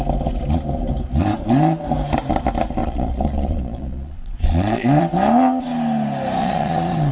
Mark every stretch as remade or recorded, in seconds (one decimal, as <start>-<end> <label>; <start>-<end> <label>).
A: 0.0-2.8 recorded; 2.8-5.0 remade; 5.0-6.4 recorded; 6.4-7.1 remade